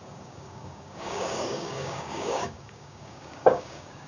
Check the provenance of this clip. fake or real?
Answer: fake